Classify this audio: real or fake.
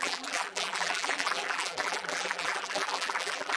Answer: fake